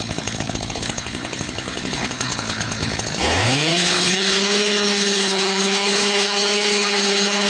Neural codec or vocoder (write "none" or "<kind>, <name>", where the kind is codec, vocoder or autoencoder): codec, HILCodec